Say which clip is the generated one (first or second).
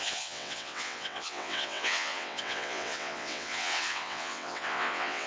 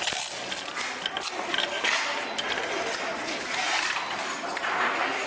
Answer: first